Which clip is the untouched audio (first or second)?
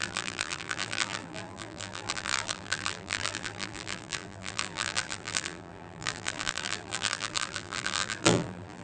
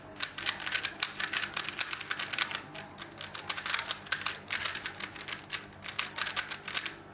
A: second